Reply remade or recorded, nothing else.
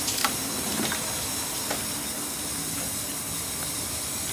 remade